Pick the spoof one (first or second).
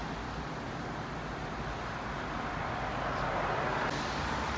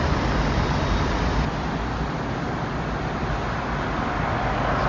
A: second